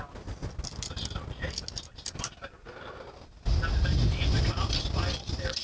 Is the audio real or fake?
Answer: real